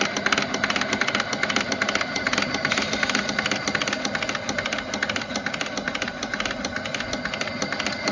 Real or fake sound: real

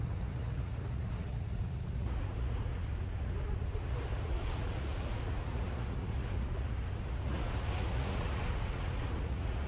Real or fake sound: fake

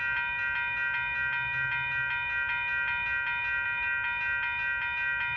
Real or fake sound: real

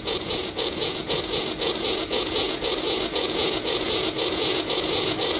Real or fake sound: fake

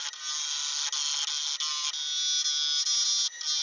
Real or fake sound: real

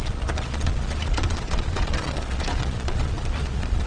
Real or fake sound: fake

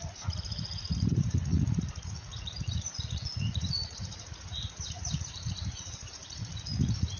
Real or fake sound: fake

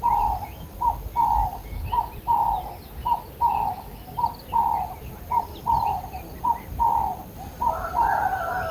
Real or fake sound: real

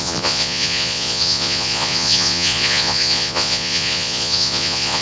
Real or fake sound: fake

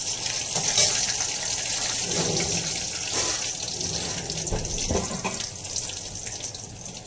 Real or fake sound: real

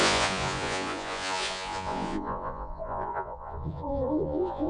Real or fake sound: fake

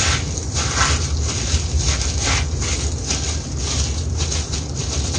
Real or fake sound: real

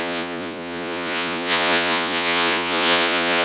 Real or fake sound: fake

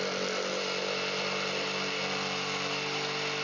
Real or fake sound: real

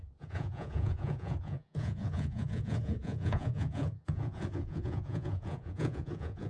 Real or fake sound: fake